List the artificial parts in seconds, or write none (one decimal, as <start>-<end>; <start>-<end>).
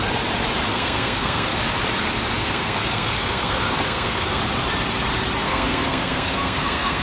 0.7-1.6; 2.4-4.4; 5.4-7.0